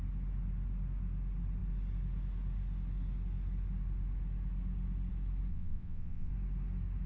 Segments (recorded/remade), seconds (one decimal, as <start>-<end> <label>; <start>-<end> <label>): 0.0-5.5 recorded; 5.5-6.3 remade; 6.3-7.1 recorded